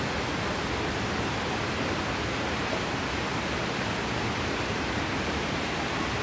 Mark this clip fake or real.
real